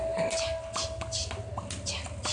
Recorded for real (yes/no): yes